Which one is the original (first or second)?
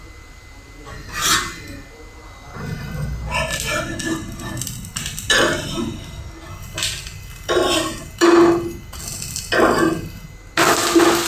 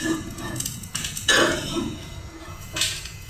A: first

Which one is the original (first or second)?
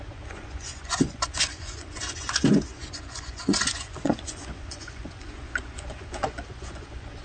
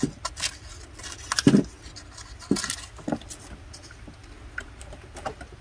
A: second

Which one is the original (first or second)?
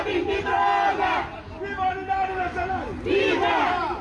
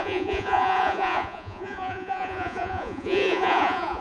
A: first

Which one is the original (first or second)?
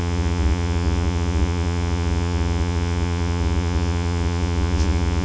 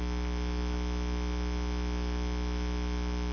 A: second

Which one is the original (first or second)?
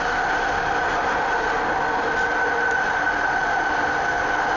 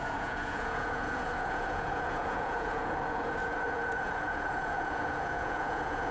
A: first